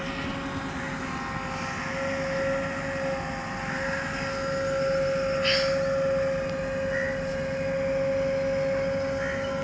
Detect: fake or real real